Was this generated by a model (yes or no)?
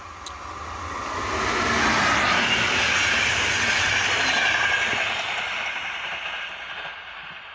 no